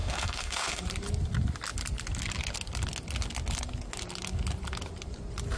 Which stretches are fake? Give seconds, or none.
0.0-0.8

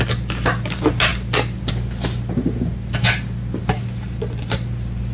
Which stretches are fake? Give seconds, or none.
none

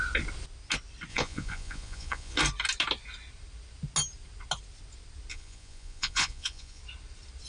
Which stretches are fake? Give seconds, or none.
1.1-2.4; 5.3-6.8

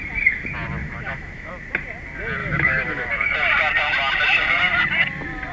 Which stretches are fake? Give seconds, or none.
0.8-1.5; 2.4-3.1

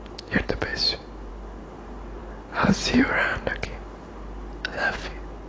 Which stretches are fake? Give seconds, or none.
none